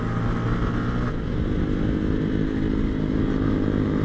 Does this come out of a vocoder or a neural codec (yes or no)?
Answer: no